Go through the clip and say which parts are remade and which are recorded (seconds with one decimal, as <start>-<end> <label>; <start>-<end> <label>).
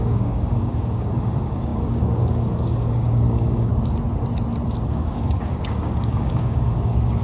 0.0-3.7 remade; 3.7-4.9 recorded; 4.9-7.2 remade